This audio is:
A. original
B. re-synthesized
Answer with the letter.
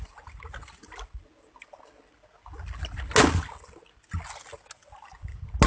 A